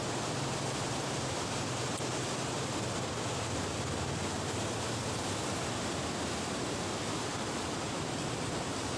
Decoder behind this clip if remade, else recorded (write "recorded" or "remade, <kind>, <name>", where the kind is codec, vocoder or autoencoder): recorded